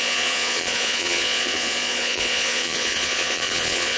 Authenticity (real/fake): fake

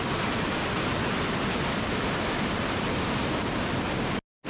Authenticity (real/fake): real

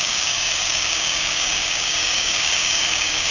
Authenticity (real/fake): fake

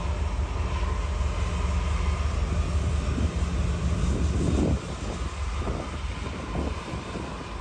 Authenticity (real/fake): real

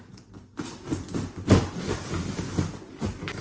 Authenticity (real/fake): real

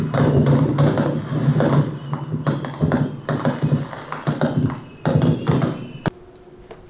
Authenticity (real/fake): real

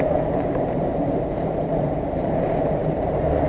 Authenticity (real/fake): fake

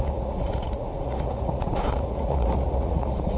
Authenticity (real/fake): fake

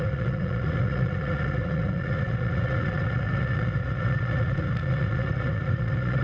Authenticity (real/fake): fake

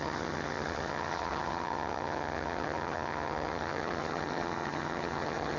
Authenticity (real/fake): fake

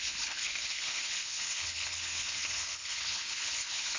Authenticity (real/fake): fake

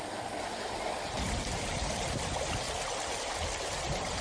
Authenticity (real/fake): real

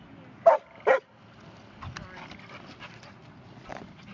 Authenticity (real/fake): real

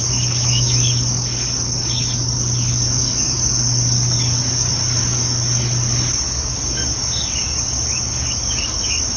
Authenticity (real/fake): fake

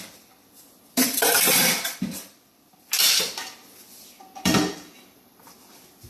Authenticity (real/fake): fake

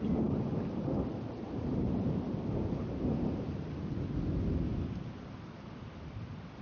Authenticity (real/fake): real